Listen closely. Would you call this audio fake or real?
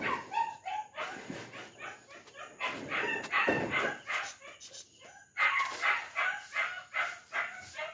real